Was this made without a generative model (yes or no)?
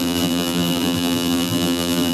no